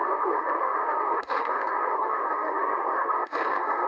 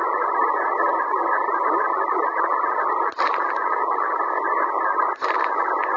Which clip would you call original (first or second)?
second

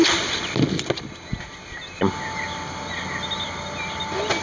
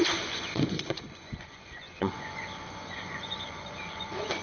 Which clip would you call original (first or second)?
first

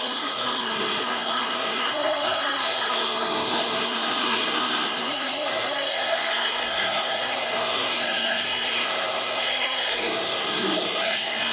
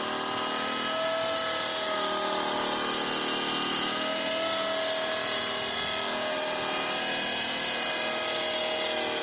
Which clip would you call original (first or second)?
second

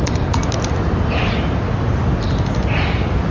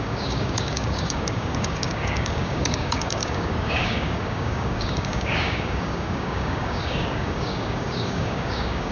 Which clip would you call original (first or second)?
first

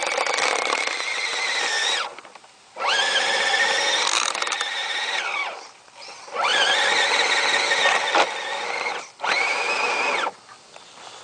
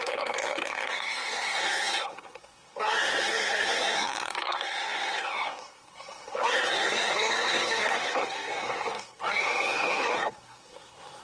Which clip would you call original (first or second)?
first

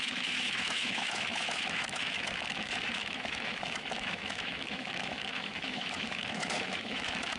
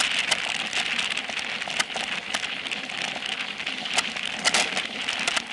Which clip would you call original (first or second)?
second